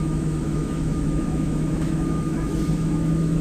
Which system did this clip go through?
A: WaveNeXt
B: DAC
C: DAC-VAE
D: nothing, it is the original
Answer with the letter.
C